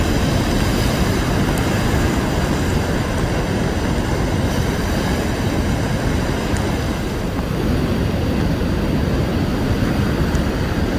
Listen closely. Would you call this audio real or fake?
real